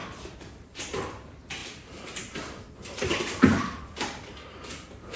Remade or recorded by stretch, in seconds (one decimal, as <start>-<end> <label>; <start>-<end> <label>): 0.0-0.8 remade; 0.8-1.6 recorded; 1.6-4.7 remade; 4.7-5.2 recorded